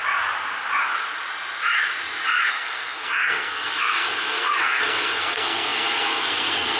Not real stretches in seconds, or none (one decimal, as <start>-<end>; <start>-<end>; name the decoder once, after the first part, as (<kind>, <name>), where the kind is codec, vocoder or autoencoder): 2.5-6.8 (codec, SNAC)